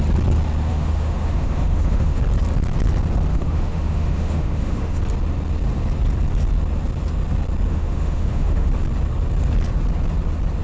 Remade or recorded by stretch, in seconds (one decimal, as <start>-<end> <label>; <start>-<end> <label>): 0.0-0.7 recorded; 0.7-2.2 remade; 2.2-3.3 recorded; 3.3-5.0 remade; 5.0-7.7 recorded; 7.7-8.7 remade; 8.7-10.6 recorded